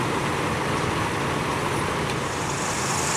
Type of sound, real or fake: real